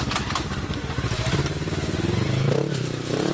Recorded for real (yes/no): no